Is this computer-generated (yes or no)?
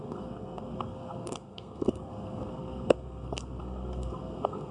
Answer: yes